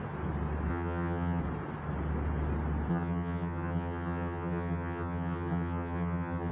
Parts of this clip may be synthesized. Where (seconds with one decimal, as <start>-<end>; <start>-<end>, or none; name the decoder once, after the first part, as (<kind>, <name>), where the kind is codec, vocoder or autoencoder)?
0.7-1.4 (vocoder, HiFi-GAN); 2.9-6.5